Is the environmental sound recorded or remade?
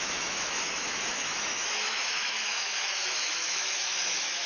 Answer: remade